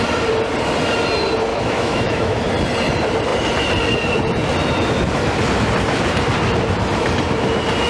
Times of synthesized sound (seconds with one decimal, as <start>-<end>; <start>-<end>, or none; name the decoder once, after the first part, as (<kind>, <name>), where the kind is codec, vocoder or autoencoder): 1.5-2.5 (autoencoder, DAC-VAE)